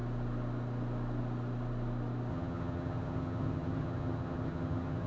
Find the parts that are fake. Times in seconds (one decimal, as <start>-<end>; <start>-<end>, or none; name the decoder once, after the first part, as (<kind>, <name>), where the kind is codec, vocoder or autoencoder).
2.3-5.1 (vocoder, HiFi-GAN)